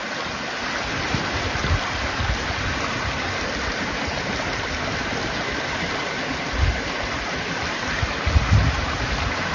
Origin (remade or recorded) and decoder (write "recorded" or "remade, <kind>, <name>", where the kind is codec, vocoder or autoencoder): recorded